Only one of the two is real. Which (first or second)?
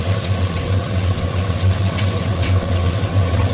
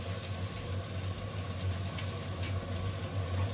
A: second